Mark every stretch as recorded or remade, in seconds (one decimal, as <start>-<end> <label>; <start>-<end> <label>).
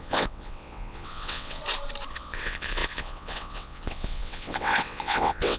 0.0-1.6 remade; 1.6-2.1 recorded; 2.1-5.6 remade